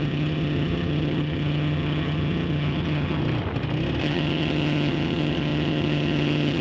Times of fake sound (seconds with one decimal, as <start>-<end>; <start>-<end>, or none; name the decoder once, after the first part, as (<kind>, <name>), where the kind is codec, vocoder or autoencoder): 0.0-3.2 (vocoder, HiFi-GAN); 4.0-6.6